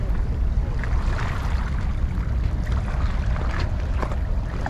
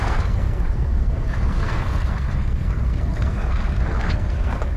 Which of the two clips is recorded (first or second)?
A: first